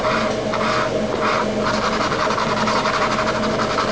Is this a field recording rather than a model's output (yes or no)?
yes